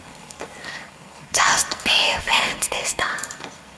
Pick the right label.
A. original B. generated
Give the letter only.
B